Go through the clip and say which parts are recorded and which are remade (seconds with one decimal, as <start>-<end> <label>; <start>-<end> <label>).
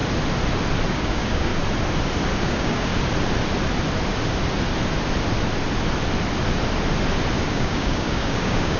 0.0-0.9 recorded; 0.9-1.5 remade; 1.5-2.4 recorded; 2.4-2.9 remade; 2.9-7.5 recorded; 7.5-8.8 remade